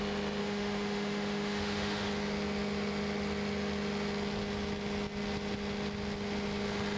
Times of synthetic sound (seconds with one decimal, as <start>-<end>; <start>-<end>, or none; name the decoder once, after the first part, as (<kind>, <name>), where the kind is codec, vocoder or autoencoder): 0.4-2.1 (autoencoder, DAC-VAE)